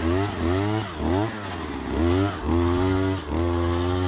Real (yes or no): yes